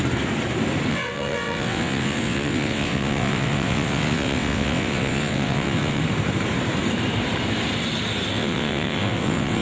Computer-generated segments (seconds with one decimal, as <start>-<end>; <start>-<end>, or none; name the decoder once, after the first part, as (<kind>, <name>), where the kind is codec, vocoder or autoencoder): 0.9-6.0 (vocoder, WaveNeXt); 8.3-9.6